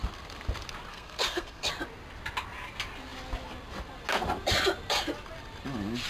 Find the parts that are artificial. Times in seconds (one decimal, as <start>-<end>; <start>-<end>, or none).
0.9-1.7